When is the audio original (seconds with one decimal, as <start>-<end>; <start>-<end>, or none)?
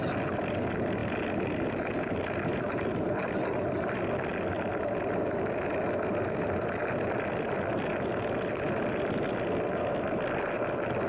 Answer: 0.0-11.1